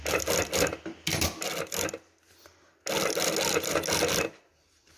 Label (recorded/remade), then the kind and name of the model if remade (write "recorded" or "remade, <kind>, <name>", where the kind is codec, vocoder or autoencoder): recorded